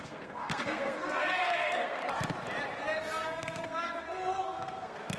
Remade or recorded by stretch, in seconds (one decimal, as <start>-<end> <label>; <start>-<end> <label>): 0.0-2.0 remade; 2.0-3.0 recorded; 3.0-5.2 remade